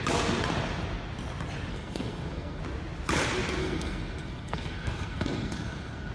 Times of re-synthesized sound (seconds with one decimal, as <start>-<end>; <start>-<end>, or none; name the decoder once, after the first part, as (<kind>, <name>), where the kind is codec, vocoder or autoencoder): 1.7-2.6 (codec, SNAC); 3.6-6.1